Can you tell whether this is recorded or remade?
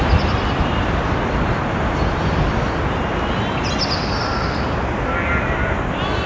recorded